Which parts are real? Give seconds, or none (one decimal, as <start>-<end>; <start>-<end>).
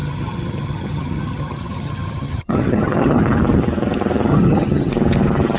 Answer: 3.2-4.3; 4.9-5.6